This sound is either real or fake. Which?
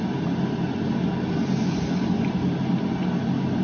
real